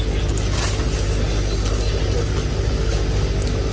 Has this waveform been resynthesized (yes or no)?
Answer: no